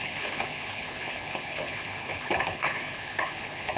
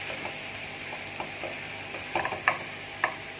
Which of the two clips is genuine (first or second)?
second